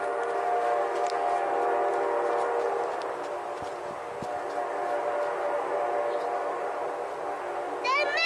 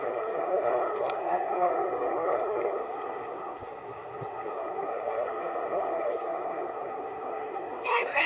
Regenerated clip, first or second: second